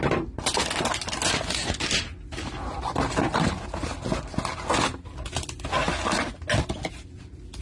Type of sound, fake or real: real